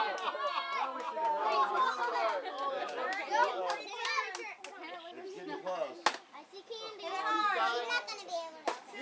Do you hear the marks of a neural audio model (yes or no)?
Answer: no